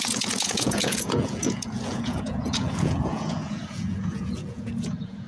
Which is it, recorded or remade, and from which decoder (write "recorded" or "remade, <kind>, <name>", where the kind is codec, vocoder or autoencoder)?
remade, vocoder, Vocos